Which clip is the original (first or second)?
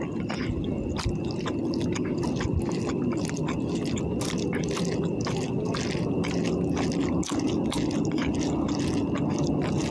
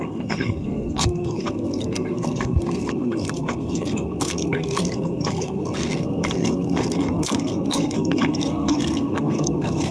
first